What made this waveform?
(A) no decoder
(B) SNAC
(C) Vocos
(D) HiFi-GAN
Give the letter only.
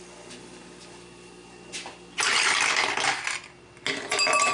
A